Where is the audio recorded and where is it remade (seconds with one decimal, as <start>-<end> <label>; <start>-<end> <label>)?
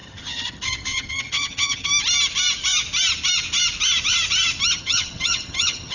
0.0-1.9 remade; 1.9-4.8 recorded; 4.8-5.9 remade